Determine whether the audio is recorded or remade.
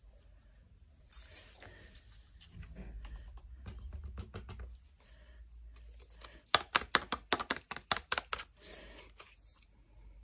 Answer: recorded